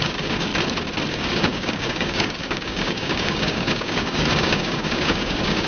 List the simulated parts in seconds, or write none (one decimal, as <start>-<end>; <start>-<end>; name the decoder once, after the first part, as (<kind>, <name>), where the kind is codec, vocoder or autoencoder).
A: 0.0-0.5 (codec, DAC); 1.1-5.7

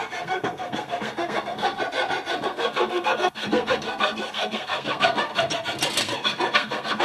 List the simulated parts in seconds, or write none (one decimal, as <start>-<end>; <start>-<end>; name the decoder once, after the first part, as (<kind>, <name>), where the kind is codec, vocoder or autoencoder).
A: 0.0-1.8 (codec, SNAC); 2.3-5.3; 6.0-7.0

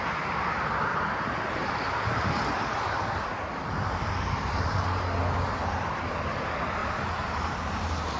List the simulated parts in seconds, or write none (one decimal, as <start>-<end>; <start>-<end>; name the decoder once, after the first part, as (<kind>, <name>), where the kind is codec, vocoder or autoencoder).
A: 0.9-5.0 (vocoder, BigVGAN v2); 6.8-8.2